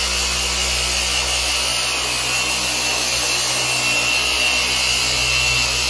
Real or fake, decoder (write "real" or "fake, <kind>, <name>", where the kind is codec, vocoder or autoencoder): real